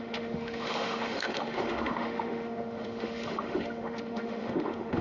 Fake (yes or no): yes